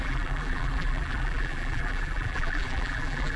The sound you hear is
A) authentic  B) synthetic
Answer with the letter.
B